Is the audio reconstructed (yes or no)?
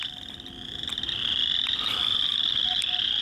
no